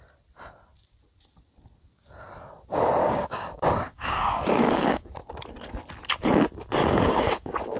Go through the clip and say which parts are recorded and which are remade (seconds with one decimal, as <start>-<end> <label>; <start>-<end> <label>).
0.0-3.0 recorded; 3.0-5.1 remade; 5.1-6.8 recorded; 6.8-7.8 remade